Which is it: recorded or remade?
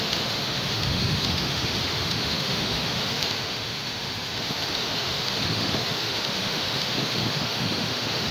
remade